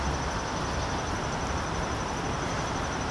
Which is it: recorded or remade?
recorded